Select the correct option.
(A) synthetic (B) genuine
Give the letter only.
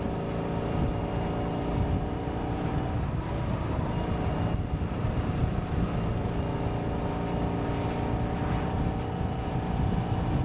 B